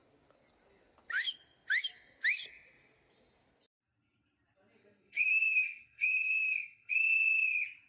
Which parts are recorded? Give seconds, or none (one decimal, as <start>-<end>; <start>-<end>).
0.0-4.8; 6.9-7.9